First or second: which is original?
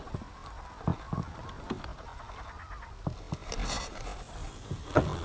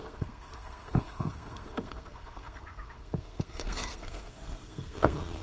first